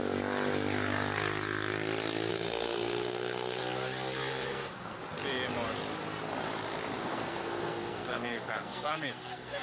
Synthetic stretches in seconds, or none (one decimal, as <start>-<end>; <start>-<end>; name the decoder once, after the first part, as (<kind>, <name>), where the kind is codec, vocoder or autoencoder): 2.3-3.6 (codec, SNAC); 4.3-5.0; 7.0-9.6

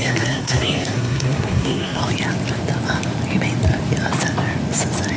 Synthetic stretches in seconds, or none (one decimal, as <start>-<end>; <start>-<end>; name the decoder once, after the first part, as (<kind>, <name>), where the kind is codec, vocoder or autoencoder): 0.0-2.0 (codec, SNAC)

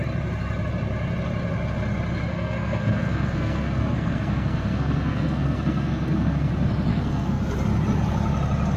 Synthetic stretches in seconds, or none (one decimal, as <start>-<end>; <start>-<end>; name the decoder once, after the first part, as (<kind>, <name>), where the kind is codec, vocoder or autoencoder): 2.3-6.5 (codec, SNAC); 6.9-7.4

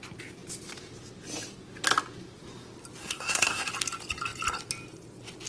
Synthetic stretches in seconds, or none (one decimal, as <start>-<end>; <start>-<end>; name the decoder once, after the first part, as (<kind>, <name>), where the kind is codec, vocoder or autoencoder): 3.0-3.7 (codec, SNAC)

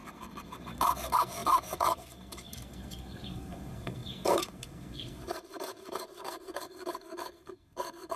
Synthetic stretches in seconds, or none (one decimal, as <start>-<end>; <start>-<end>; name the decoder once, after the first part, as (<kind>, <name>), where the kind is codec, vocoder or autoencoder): 0.0-8.2 (codec, SNAC)

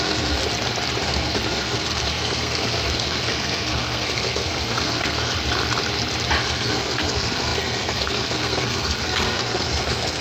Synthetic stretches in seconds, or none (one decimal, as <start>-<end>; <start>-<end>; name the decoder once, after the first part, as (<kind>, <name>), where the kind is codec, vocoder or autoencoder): 0.0-0.4 (codec, SNAC); 1.0-5.3; 6.4-10.2

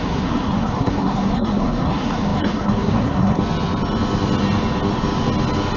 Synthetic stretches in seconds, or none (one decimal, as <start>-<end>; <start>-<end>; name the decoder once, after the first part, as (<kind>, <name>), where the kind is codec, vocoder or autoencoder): 0.0-3.4 (codec, SNAC)

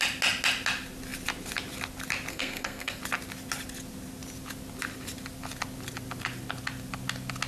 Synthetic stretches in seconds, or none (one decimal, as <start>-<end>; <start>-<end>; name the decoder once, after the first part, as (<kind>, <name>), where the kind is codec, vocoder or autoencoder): 2.3-3.0 (codec, SNAC)